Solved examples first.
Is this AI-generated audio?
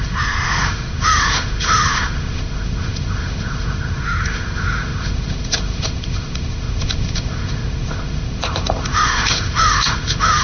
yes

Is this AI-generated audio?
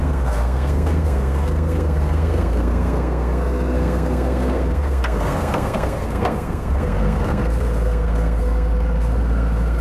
yes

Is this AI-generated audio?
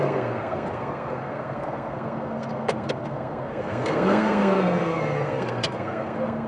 yes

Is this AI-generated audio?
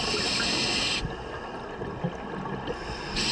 no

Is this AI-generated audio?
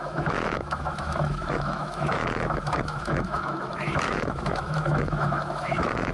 yes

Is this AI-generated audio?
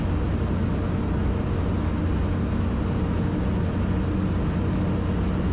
no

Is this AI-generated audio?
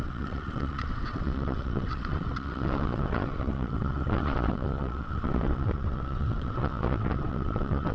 yes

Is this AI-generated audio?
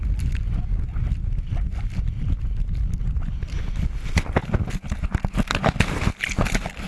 no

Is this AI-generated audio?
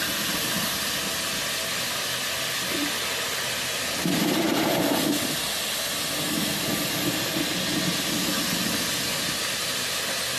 no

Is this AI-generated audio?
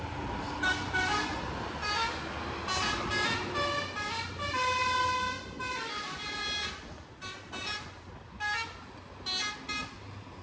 no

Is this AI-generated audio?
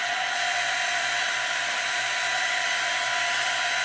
no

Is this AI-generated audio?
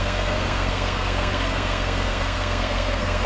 yes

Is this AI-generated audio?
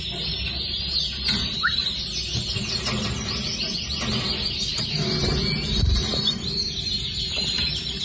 no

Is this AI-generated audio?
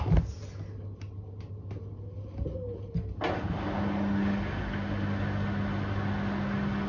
no